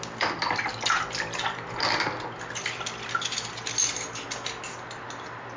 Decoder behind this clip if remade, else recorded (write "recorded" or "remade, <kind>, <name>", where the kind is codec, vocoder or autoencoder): recorded